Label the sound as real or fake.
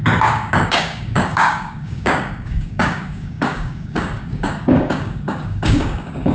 fake